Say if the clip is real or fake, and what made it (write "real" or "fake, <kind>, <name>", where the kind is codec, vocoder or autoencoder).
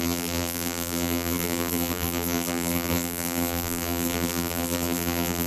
fake, vocoder, BigVGAN v2